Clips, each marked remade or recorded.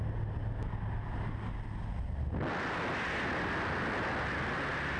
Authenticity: recorded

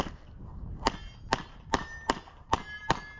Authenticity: recorded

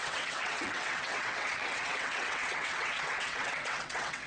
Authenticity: remade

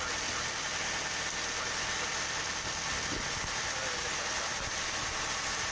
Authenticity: recorded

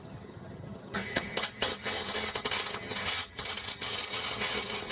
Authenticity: remade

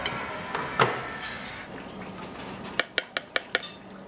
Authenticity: recorded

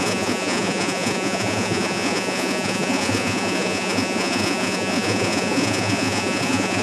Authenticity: remade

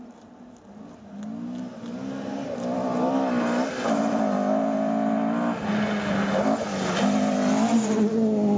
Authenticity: recorded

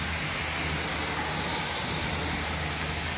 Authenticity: recorded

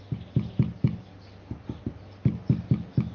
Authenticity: recorded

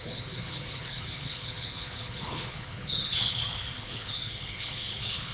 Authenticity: remade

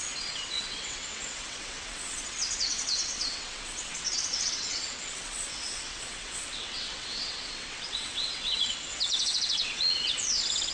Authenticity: remade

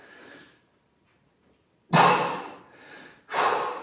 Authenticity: recorded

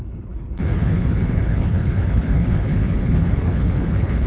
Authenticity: remade